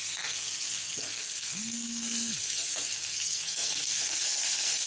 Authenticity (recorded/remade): remade